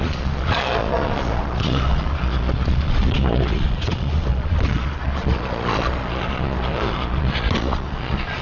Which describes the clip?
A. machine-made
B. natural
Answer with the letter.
A